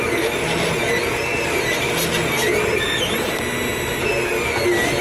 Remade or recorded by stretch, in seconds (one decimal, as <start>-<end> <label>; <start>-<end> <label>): 0.0-5.0 recorded